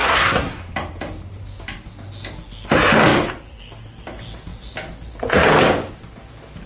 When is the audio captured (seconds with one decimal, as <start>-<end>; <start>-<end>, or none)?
0.6-6.7